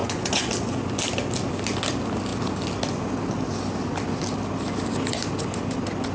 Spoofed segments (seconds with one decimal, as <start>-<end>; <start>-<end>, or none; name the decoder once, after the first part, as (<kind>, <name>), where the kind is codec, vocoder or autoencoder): 0.0-0.5 (vocoder, Vocos)